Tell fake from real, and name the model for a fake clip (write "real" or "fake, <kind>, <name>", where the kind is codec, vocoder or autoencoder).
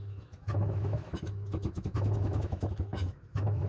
fake, autoencoder, DAC-VAE